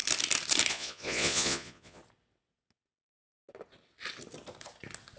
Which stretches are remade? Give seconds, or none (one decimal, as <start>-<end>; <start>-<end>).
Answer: 0.7-2.0